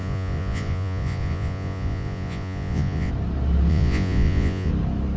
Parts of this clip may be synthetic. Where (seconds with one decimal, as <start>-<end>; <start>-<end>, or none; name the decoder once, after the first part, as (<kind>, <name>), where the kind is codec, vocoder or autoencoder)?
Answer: 0.0-3.1 (vocoder, Vocos); 3.7-4.7